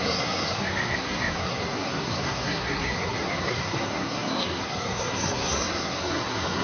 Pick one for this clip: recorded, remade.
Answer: remade